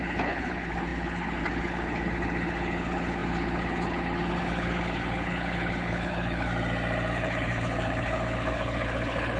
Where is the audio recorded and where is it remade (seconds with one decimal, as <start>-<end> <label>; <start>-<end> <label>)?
0.0-6.5 remade; 6.5-7.1 recorded; 7.1-9.4 remade